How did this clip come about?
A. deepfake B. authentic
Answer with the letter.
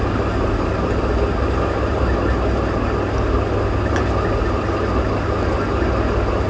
B